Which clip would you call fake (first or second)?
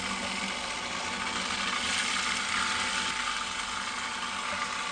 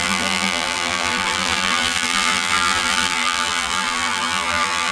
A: second